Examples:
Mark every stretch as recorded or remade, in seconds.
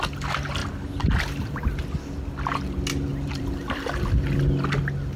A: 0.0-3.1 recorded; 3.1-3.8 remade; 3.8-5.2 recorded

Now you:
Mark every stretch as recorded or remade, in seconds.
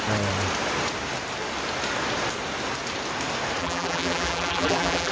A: 0.0-3.6 recorded; 3.6-5.1 remade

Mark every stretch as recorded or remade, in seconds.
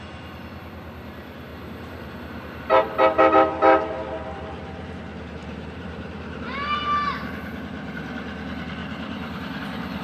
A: 0.0-1.5 recorded; 1.5-2.6 remade; 2.6-5.4 recorded; 5.4-7.3 remade; 7.3-8.8 recorded; 8.8-9.6 remade; 9.6-10.0 recorded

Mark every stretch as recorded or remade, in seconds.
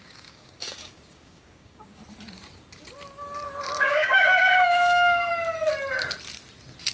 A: 0.0-2.0 remade; 2.0-3.8 recorded; 3.8-5.3 remade; 5.3-6.9 recorded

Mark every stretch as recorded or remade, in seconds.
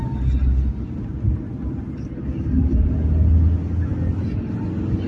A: 0.0-5.1 recorded